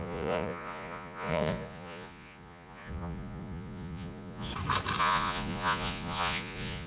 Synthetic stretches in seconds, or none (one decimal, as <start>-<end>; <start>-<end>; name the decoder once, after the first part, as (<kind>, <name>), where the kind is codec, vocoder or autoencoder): 0.0-4.5 (vocoder, Vocos); 5.0-6.9